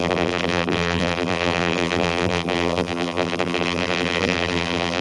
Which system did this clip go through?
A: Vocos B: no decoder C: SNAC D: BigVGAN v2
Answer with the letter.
D